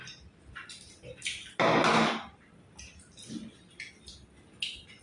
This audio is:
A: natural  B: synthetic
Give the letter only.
A